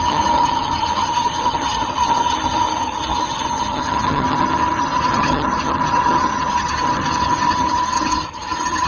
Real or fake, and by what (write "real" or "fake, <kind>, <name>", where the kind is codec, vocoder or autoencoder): fake, vocoder, HiFi-GAN